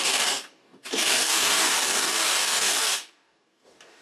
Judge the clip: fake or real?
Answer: fake